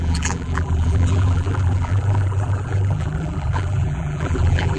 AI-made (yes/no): yes